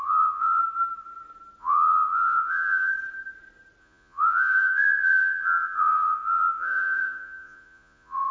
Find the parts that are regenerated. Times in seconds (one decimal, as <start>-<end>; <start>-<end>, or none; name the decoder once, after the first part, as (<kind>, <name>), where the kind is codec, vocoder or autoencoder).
0.0-0.6 (vocoder, Vocos); 1.6-2.9; 3.8-8.3